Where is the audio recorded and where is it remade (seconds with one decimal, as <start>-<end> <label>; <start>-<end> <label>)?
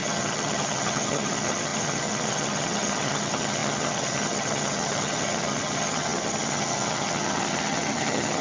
0.0-8.4 remade